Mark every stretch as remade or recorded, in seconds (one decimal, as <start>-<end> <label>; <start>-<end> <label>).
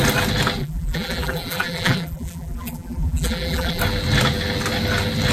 0.0-0.6 recorded; 0.6-3.8 remade; 3.8-5.3 recorded